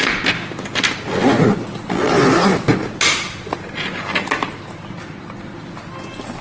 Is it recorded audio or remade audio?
recorded